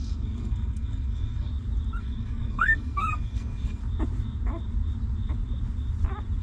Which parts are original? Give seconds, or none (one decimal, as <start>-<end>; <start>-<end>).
1.5-2.0; 3.8-6.4